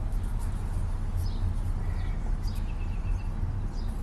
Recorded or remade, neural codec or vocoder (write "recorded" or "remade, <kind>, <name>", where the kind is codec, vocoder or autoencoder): recorded